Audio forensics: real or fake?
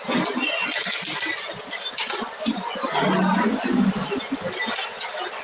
real